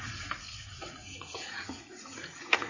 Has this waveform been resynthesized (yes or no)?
yes